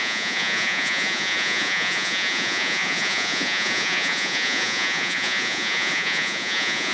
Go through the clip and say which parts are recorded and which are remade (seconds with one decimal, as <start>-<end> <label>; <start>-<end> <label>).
0.0-6.9 remade